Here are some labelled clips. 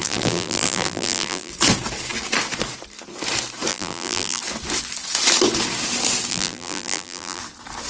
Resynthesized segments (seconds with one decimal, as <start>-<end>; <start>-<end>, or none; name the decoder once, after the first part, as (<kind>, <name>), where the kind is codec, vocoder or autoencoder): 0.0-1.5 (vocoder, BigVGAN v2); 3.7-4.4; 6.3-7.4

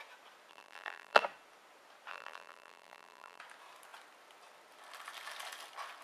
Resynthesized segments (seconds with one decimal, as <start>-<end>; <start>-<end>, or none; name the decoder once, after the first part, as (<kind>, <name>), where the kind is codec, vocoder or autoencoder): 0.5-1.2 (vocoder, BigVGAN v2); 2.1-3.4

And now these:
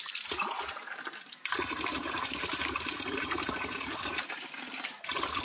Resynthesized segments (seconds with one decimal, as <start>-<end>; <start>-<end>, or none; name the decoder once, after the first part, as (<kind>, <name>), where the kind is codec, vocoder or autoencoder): 1.9-5.4 (vocoder, BigVGAN v2)

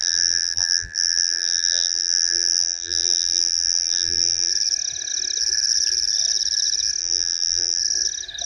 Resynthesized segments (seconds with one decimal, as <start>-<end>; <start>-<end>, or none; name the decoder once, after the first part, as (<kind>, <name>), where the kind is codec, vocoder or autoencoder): 0.0-4.5 (vocoder, BigVGAN v2); 7.0-7.8

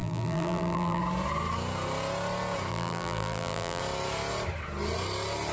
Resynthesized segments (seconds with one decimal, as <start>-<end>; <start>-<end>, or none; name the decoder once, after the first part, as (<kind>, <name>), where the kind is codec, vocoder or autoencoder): 0.0-1.0 (vocoder, BigVGAN v2); 2.7-3.8

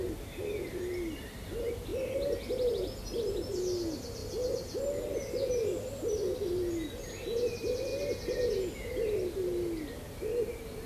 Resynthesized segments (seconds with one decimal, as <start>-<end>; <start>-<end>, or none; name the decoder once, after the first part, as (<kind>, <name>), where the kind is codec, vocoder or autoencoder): 0.0-1.9 (vocoder, BigVGAN v2); 2.7-4.2; 7.5-7.9

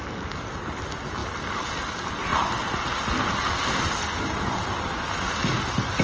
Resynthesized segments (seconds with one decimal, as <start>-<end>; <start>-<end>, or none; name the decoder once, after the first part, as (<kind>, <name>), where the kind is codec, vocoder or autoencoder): none

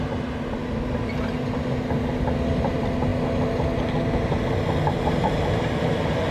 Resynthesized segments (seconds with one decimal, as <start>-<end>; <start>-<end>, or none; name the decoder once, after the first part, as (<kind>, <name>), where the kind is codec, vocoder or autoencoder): none